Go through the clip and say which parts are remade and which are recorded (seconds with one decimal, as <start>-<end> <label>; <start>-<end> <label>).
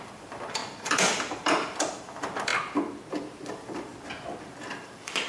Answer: 0.0-2.5 remade; 2.5-3.5 recorded; 3.5-3.9 remade; 3.9-4.5 recorded; 4.5-5.3 remade